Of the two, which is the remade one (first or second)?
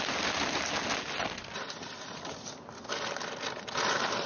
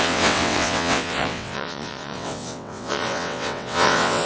second